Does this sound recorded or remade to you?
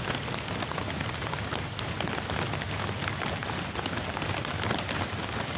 recorded